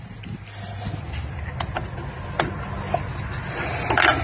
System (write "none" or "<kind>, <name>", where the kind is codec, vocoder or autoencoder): none